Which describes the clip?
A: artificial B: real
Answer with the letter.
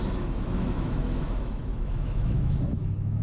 A